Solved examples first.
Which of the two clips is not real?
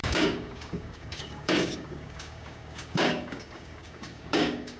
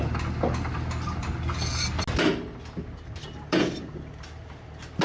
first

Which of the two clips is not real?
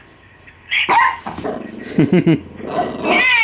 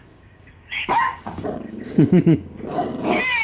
second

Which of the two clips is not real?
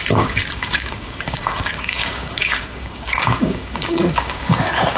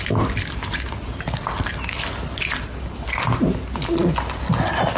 first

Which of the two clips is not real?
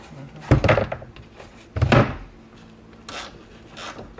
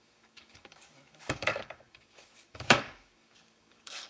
second